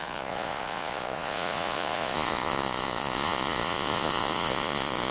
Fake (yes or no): yes